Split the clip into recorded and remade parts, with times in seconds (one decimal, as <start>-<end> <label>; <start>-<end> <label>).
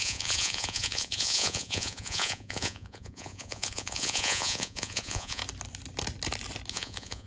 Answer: 0.0-5.4 remade; 5.4-6.7 recorded; 6.7-7.3 remade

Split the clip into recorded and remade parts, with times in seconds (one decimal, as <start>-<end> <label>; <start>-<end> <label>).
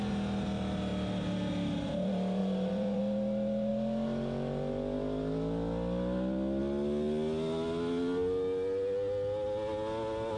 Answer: 0.0-2.4 recorded; 2.4-3.0 remade; 3.0-10.4 recorded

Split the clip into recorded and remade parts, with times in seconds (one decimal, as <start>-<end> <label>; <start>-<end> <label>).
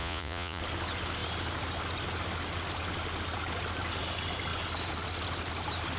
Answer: 0.0-0.6 remade; 0.6-6.0 recorded